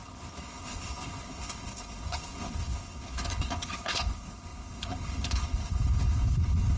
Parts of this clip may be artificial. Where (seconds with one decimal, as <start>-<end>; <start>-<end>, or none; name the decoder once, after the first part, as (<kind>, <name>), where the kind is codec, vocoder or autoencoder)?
0.0-6.8 (codec, HILCodec)